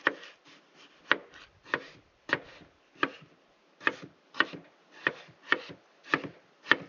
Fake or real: real